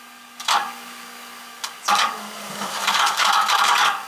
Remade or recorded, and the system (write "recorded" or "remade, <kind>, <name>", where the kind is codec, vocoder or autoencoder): remade, codec, DAC